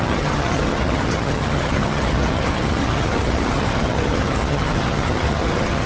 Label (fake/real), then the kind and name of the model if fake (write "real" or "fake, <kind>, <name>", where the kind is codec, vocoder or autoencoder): fake, vocoder, HiFi-GAN